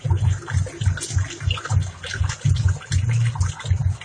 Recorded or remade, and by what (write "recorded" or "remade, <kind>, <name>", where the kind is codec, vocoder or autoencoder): recorded